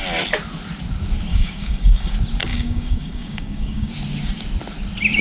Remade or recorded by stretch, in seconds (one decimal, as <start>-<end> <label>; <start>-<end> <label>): 0.0-1.3 recorded; 1.3-2.1 remade; 2.1-2.5 recorded; 2.5-3.9 remade; 3.9-5.2 recorded